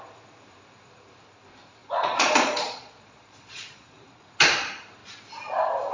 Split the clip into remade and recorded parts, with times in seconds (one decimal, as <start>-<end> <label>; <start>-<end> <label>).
0.0-1.8 recorded; 1.8-4.2 remade; 4.2-5.9 recorded